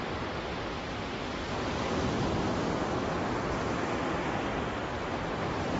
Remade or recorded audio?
recorded